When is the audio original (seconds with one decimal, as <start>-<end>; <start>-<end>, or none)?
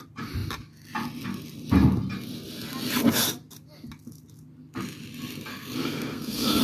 0.0-5.5